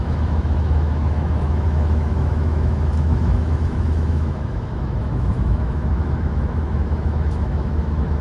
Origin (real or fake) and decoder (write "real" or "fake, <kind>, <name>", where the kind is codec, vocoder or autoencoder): fake, autoencoder, DAC-VAE